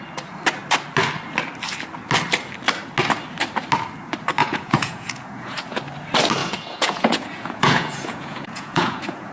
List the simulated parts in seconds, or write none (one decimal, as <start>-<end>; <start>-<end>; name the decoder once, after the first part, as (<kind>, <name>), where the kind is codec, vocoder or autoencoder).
4.4-5.8 (vocoder, Vocos); 6.4-9.3